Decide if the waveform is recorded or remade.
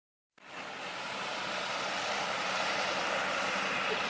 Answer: remade